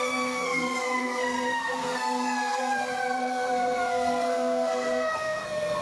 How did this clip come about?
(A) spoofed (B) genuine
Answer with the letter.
A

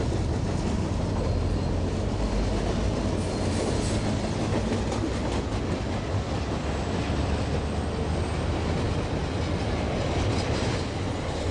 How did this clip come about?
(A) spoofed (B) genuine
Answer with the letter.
B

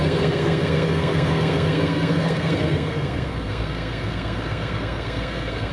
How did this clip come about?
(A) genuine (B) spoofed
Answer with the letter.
B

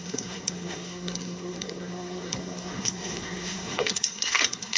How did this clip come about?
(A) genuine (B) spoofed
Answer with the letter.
B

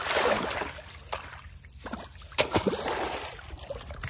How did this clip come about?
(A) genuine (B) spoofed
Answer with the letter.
A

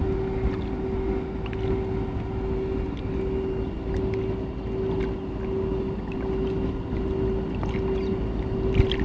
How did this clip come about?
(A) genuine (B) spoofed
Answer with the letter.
A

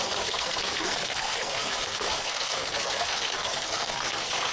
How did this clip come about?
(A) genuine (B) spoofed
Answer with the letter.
B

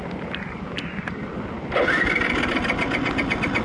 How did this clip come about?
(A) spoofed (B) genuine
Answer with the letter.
B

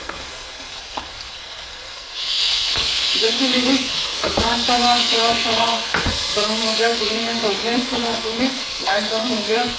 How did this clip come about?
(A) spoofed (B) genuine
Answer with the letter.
A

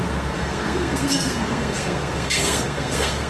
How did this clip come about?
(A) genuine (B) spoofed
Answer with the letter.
B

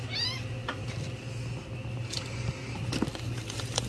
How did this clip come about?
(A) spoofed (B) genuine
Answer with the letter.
B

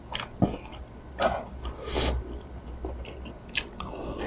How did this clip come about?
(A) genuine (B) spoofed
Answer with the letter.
A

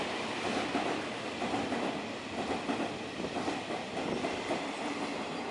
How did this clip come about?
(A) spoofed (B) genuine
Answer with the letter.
B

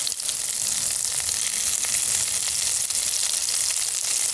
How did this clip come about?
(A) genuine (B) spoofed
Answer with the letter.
A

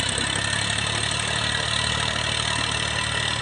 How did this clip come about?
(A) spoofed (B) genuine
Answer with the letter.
B